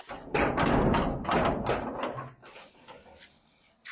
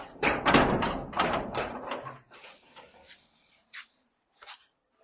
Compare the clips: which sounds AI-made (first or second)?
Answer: second